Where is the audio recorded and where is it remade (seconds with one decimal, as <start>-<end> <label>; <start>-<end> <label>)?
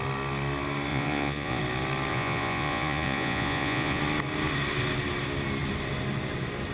0.0-0.9 recorded; 0.9-1.6 remade; 1.6-2.1 recorded; 2.1-4.0 remade; 4.0-6.7 recorded